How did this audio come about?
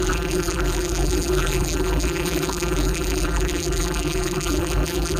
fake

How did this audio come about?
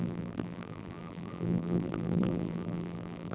fake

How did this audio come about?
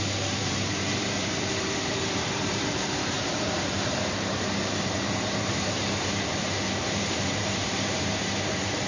fake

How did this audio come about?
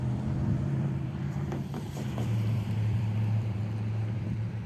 fake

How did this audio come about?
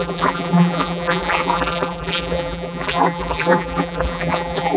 fake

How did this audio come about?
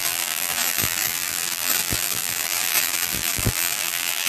fake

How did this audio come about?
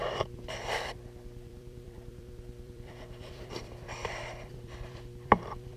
fake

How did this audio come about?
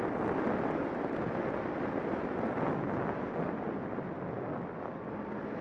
real